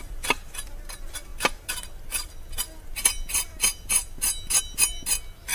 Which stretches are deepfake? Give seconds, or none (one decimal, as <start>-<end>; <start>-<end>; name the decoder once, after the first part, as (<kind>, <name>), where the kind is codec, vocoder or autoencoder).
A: none